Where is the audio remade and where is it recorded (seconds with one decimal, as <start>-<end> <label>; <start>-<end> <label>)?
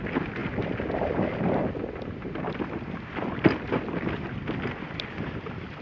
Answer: 0.0-5.8 recorded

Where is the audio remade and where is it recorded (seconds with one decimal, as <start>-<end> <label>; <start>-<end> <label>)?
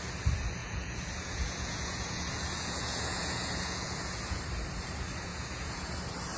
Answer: 0.0-0.6 recorded; 0.6-4.4 remade; 4.4-5.3 recorded; 5.3-5.9 remade; 5.9-6.4 recorded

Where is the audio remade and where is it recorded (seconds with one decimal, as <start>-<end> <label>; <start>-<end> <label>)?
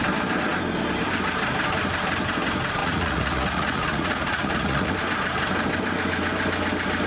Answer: 0.0-2.8 recorded; 2.8-4.9 remade; 4.9-7.1 recorded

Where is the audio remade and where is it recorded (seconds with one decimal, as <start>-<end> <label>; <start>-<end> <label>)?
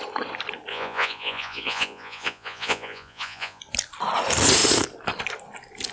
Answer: 0.0-0.7 recorded; 0.7-3.6 remade; 3.6-5.9 recorded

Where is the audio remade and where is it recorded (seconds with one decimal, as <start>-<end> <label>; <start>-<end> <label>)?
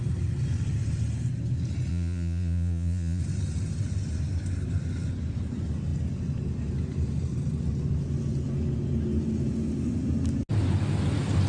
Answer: 0.0-1.9 recorded; 1.9-3.2 remade; 3.2-11.5 recorded